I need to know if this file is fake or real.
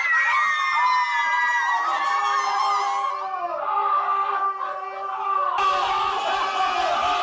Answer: real